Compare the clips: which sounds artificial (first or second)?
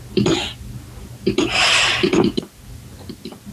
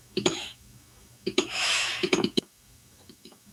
second